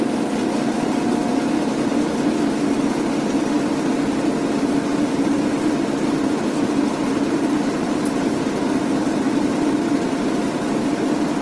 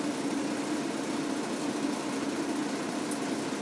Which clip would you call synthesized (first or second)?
first